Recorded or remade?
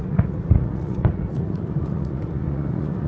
remade